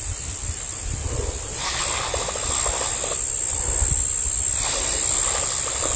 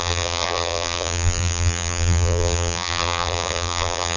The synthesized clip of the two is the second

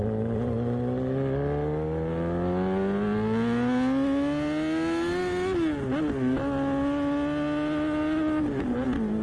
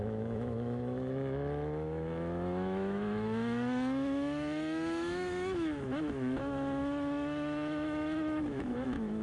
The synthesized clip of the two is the second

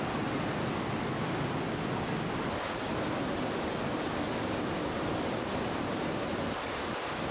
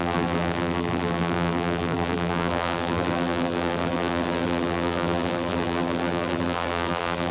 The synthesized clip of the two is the second